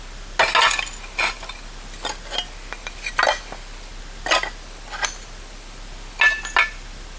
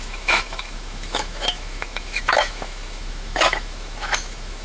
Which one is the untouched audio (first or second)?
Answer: first